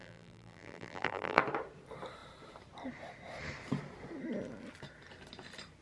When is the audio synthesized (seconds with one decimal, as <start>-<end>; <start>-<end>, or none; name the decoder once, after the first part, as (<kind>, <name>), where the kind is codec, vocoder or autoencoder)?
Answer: 0.0-1.4 (vocoder, BigVGAN v2)